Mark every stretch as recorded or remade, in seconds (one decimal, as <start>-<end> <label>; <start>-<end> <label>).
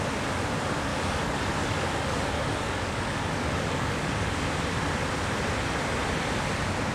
0.0-0.9 recorded; 0.9-4.3 remade; 4.3-6.9 recorded